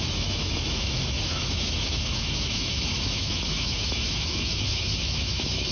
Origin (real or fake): fake